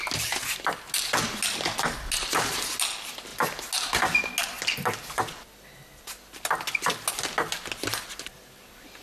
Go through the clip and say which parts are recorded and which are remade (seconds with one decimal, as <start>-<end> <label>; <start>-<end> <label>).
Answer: 0.0-9.0 recorded